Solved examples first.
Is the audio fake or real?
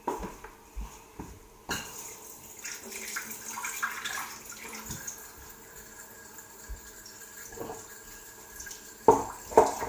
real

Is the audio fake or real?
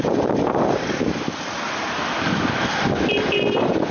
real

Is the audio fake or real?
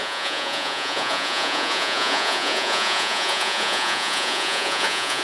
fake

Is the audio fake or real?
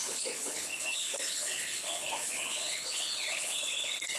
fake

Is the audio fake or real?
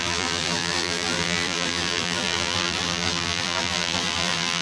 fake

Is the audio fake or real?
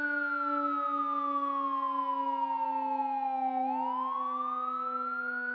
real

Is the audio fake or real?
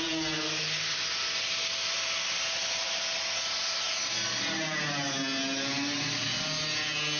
real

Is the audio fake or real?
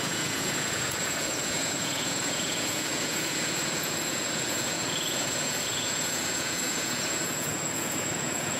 fake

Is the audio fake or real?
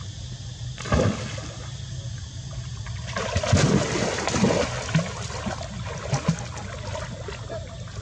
real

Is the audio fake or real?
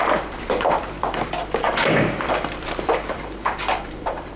fake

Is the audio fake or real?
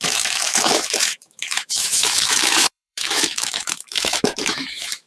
fake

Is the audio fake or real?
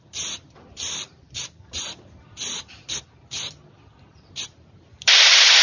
fake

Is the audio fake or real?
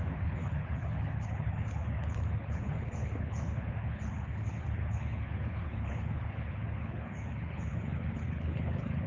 fake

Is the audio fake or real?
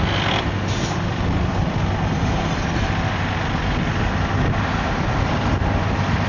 real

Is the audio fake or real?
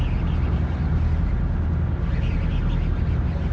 real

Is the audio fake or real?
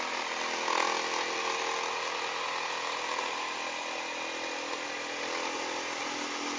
real